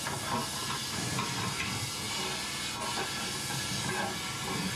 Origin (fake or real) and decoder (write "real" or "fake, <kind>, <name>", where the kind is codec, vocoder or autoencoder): real